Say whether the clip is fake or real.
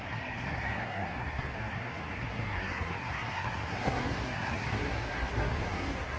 fake